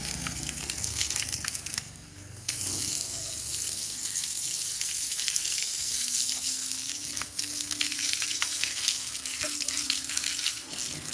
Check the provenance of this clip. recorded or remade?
remade